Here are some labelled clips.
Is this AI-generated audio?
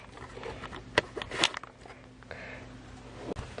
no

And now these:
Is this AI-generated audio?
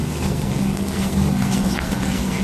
yes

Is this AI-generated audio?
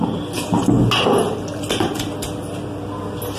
no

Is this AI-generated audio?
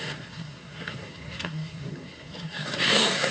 yes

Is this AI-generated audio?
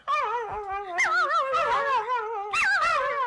no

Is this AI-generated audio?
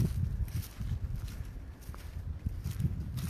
no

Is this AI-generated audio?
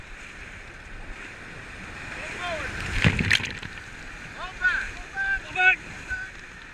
no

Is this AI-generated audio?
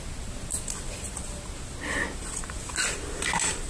no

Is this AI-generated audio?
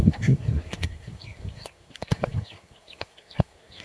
yes